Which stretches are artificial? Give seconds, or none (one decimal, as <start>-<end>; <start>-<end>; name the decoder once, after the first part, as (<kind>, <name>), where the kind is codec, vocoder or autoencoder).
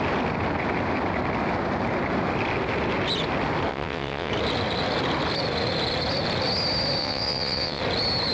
3.7-4.3 (vocoder, WaveNeXt); 7.0-7.8